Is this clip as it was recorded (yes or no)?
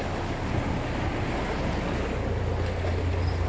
yes